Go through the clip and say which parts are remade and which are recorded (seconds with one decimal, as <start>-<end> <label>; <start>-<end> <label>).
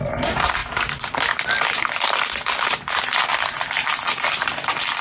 0.0-0.6 remade; 0.6-2.2 recorded; 2.2-5.0 remade